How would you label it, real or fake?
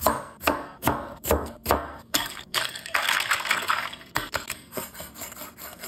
fake